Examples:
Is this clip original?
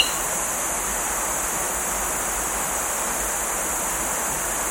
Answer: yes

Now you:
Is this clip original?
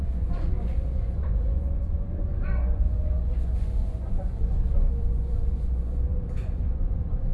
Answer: no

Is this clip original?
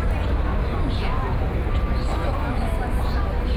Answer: yes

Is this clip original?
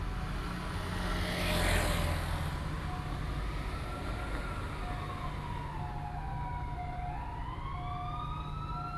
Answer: yes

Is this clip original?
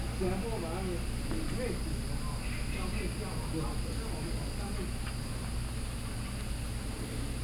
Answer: yes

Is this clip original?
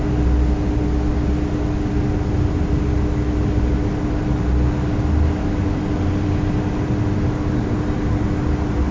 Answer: yes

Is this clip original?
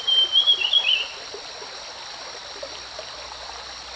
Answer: yes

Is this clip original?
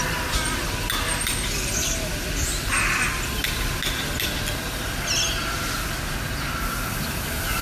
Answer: yes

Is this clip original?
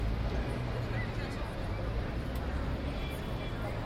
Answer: yes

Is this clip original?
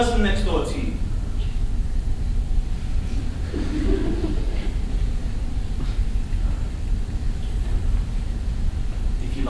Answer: no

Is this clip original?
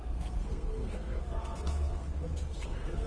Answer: no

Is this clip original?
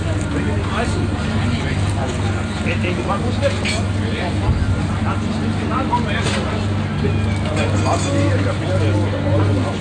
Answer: yes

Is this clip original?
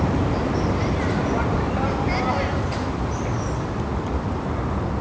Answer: yes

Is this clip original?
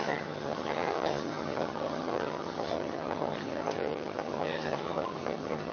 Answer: no